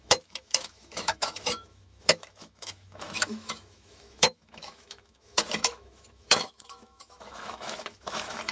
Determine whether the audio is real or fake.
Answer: fake